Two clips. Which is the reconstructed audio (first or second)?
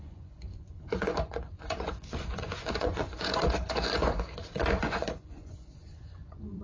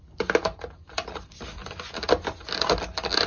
first